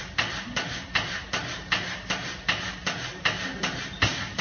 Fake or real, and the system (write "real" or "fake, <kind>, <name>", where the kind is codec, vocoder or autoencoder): real